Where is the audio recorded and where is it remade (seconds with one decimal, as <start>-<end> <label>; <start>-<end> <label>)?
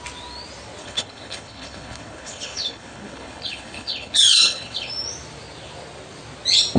0.0-0.8 recorded; 0.8-4.9 remade; 4.9-6.8 recorded